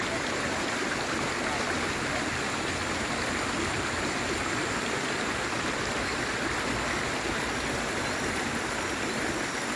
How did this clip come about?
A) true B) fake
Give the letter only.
A